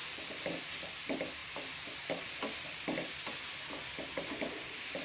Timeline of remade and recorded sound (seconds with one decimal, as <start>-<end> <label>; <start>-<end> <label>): 0.0-5.0 recorded